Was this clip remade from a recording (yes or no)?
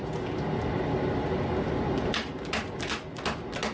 no